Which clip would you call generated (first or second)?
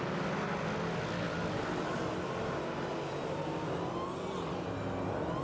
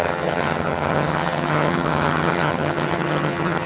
second